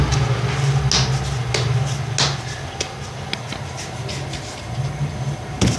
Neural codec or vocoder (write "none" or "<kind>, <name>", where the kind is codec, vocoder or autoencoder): none